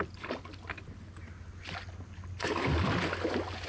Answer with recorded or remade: recorded